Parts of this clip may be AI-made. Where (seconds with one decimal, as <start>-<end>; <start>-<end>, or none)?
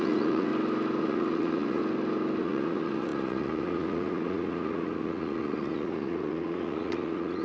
0.0-0.5; 1.0-1.8; 2.4-7.4